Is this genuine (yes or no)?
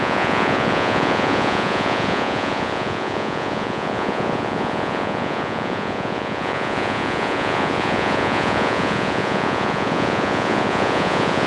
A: no